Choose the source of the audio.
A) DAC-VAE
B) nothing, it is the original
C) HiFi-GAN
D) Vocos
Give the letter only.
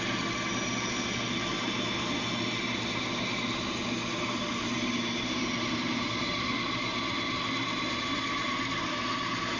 B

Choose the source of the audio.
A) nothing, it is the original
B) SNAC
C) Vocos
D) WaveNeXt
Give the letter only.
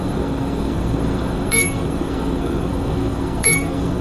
B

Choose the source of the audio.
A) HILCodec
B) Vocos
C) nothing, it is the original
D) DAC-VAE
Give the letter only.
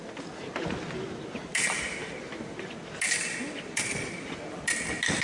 C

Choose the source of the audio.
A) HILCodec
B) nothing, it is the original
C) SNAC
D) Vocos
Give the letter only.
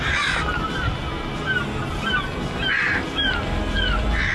B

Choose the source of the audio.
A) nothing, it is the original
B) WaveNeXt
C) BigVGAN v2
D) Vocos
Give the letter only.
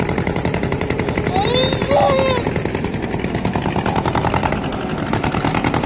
A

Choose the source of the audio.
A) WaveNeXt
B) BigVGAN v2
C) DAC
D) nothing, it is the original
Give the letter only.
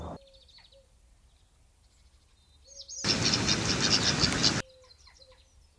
D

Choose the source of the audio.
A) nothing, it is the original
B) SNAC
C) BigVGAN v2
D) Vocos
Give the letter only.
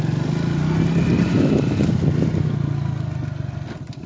A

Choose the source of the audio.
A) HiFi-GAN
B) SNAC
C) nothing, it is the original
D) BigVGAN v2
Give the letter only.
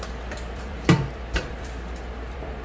D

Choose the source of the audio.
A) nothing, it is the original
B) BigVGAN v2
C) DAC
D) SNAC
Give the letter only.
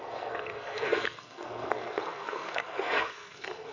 D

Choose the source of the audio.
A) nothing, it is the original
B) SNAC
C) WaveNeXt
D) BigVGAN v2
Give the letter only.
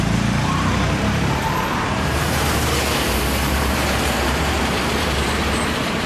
D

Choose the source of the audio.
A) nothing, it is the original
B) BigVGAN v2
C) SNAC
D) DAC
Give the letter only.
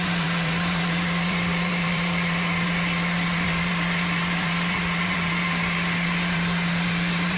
B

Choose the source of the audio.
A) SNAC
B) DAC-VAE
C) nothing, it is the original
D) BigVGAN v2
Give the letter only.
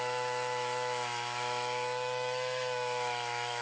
B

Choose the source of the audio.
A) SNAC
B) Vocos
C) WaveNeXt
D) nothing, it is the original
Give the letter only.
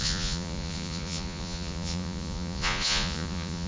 B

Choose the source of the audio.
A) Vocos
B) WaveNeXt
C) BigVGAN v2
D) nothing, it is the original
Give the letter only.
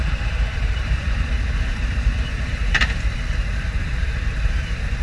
C